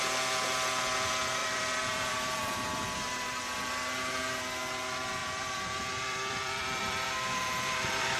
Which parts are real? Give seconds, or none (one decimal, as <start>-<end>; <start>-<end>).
0.0-1.4; 2.8-5.2